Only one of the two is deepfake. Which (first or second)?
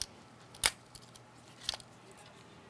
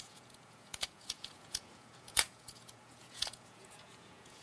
second